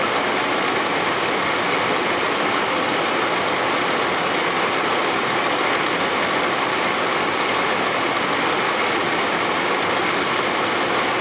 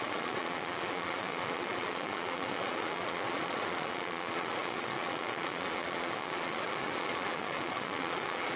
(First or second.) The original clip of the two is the first